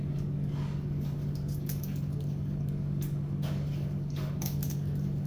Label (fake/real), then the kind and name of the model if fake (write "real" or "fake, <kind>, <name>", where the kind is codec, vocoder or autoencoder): fake, codec, DAC